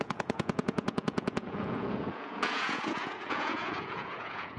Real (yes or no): no